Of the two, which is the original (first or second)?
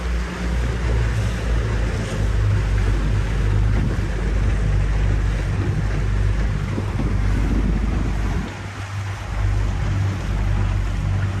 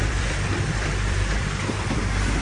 first